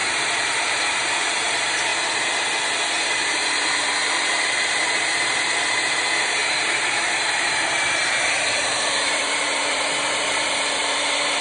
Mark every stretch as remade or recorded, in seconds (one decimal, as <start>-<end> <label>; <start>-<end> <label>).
0.0-1.9 remade; 1.9-2.9 recorded; 2.9-11.4 remade